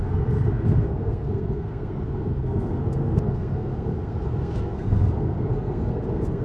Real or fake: fake